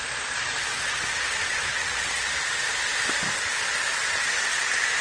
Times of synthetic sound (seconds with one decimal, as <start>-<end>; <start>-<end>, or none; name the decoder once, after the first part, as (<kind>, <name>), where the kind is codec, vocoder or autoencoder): 0.7-2.3 (vocoder, WaveNeXt); 3.9-4.6